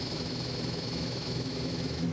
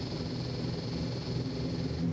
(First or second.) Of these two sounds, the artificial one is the first